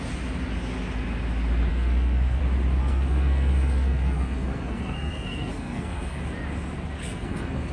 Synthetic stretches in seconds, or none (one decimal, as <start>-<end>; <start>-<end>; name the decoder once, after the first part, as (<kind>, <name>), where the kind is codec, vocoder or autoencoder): 1.7-2.4 (codec, SNAC); 2.8-6.2; 7.0-7.7